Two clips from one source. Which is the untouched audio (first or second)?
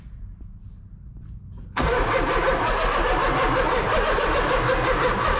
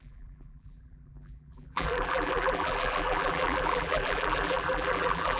first